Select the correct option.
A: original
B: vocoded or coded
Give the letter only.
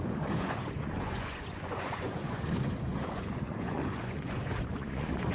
B